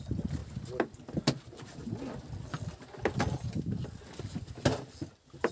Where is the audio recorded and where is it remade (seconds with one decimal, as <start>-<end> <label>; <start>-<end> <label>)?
0.0-5.5 recorded